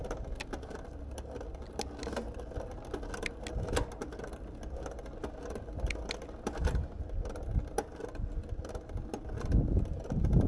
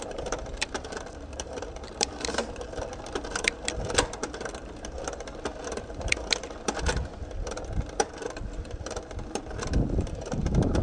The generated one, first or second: second